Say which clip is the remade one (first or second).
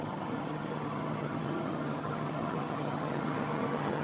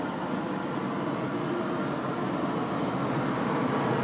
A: first